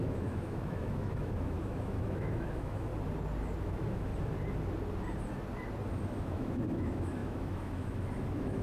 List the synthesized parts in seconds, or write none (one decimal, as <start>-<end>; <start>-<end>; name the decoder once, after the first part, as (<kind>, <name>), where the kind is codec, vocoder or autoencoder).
0.0-2.9 (autoencoder, DAC-VAE); 3.6-4.1; 6.2-8.6

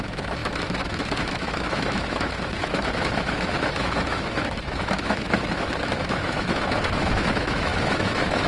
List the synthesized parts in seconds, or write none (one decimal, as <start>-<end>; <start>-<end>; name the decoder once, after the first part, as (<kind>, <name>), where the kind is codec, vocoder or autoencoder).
0.0-8.5 (autoencoder, DAC-VAE)

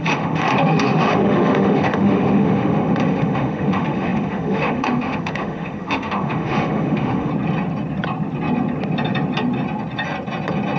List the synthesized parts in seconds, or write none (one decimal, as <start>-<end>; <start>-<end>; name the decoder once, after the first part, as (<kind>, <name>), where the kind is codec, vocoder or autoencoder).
0.0-7.3 (autoencoder, DAC-VAE)

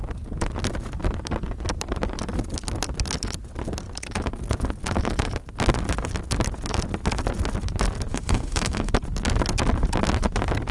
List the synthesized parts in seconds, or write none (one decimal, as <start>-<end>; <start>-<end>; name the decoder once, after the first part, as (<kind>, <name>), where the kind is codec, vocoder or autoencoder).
8.1-8.9 (autoencoder, DAC-VAE)

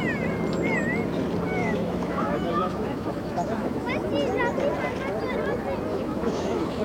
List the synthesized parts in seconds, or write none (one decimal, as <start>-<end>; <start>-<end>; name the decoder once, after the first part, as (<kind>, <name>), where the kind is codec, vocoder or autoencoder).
1.6-3.9 (autoencoder, DAC-VAE); 5.9-6.8

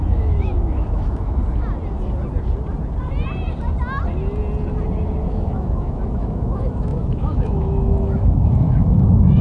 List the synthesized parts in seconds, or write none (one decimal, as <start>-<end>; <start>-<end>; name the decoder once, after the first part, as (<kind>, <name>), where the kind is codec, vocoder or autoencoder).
0.0-1.4 (autoencoder, DAC-VAE); 5.3-9.4

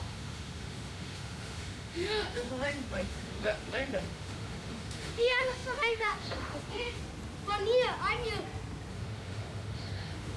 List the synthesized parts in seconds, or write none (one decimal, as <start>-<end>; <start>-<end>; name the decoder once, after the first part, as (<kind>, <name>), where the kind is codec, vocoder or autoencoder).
0.0-7.0 (autoencoder, DAC-VAE); 8.9-10.4

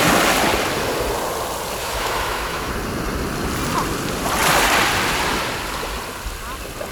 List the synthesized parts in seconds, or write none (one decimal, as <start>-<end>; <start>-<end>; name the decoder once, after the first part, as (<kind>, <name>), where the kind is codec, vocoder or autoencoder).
1.8-2.7 (autoencoder, DAC-VAE)